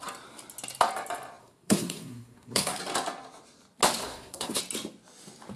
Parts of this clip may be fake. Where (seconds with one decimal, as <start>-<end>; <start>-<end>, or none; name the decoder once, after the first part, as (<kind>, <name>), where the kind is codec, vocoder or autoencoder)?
1.4-2.8 (codec, SNAC); 4.0-4.6